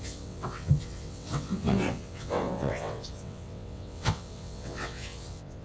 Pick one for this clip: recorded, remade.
remade